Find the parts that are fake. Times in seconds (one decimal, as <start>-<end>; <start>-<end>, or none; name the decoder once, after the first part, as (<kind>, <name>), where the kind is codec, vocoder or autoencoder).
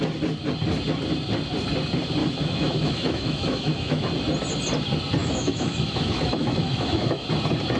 2.2-4.1 (autoencoder, DAC-VAE); 5.2-7.2